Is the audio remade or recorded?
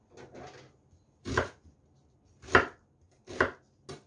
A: recorded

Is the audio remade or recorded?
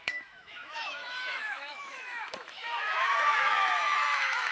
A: remade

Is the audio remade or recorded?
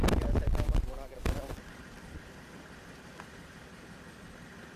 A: remade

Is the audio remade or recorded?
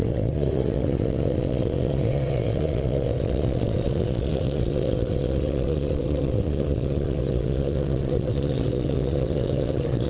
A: remade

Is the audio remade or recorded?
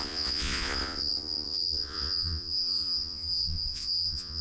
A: remade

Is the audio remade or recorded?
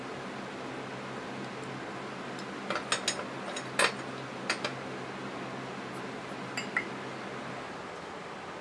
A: recorded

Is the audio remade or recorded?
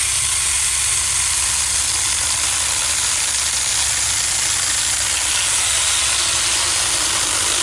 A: recorded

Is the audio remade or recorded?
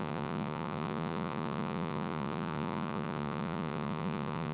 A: remade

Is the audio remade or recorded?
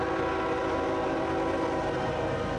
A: recorded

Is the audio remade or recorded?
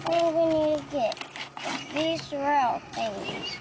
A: recorded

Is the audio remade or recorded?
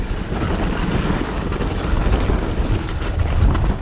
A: recorded